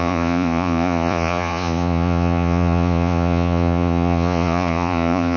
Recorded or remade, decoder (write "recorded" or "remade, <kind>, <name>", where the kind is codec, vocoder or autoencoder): remade, vocoder, Vocos